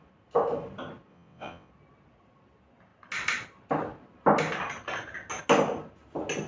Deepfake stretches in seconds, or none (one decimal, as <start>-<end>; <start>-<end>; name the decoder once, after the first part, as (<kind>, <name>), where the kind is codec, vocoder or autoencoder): 1.1-1.7 (vocoder, WaveNeXt)